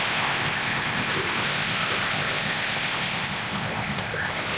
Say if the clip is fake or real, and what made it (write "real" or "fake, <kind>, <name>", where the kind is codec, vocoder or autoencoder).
fake, codec, ZipCodec